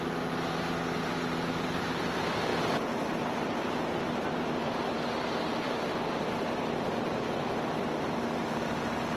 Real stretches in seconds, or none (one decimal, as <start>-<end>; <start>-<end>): 2.5-4.3